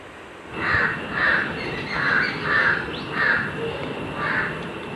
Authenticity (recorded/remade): recorded